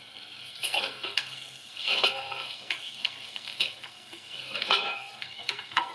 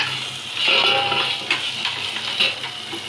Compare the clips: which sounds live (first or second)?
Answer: second